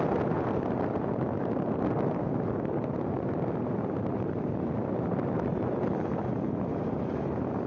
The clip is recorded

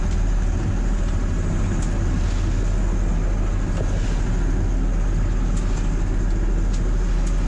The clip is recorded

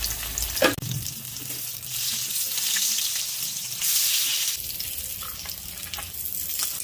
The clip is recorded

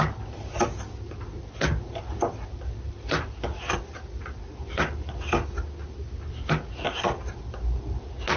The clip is recorded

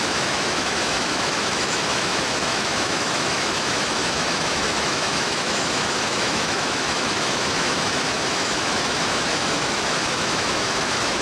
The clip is remade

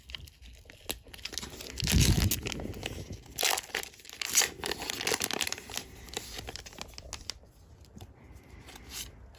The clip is recorded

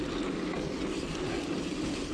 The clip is recorded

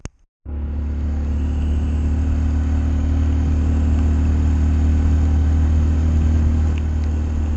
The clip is recorded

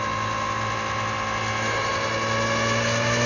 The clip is recorded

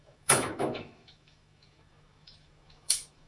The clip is remade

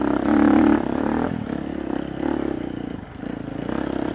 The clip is recorded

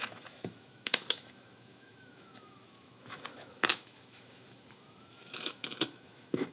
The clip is remade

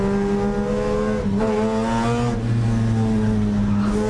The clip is recorded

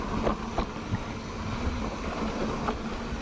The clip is recorded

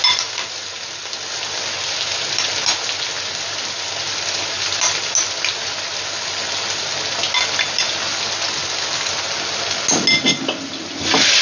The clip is recorded